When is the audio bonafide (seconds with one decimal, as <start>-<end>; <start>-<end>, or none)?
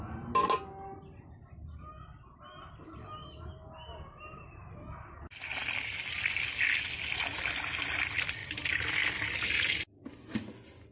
0.0-10.9